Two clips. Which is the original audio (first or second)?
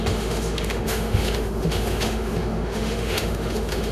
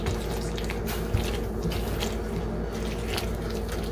second